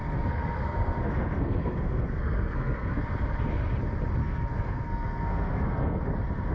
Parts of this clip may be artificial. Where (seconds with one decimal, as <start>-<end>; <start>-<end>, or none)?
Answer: 0.0-3.0; 4.2-6.0